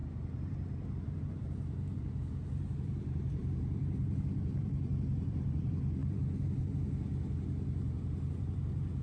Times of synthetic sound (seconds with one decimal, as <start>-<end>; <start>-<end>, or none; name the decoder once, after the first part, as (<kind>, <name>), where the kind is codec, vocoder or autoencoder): 0.0-7.1 (vocoder, BigVGAN v2); 8.3-9.0